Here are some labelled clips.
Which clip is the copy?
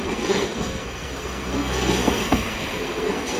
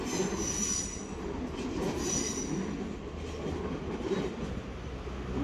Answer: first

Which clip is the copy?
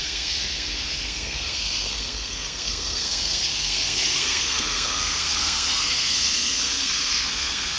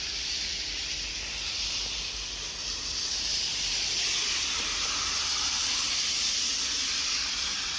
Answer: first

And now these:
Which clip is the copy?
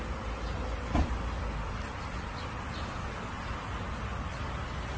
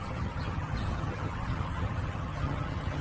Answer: second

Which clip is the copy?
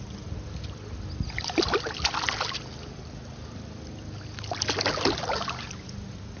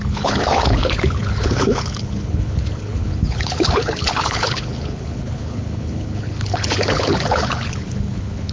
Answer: second